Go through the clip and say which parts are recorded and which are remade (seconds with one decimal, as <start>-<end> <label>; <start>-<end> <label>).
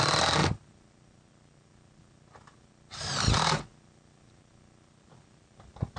0.0-6.0 recorded